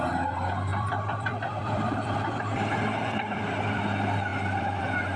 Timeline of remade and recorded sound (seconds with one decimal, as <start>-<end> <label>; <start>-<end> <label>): 0.0-0.7 recorded; 0.7-3.8 remade; 3.8-4.3 recorded; 4.3-4.8 remade; 4.8-5.2 recorded